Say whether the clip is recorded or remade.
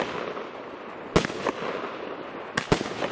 recorded